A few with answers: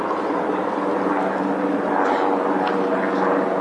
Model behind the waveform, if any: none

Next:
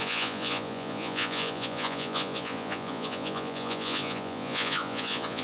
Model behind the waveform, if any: vocoder, Vocos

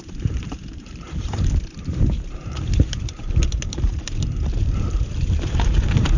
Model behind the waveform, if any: vocoder, BigVGAN v2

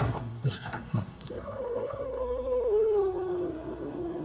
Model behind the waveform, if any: codec, SNAC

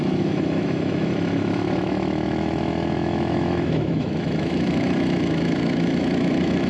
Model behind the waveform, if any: autoencoder, DAC-VAE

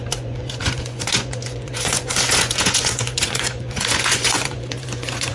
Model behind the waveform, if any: vocoder, Vocos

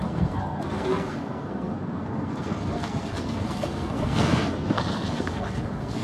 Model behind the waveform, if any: codec, SNAC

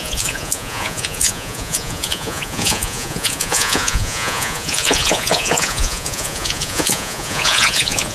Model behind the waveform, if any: vocoder, Vocos